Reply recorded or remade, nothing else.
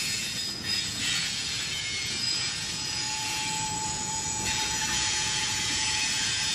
remade